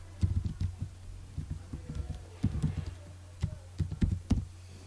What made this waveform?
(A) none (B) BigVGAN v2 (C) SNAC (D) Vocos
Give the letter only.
A